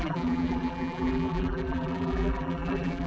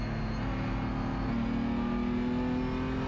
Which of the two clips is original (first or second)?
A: second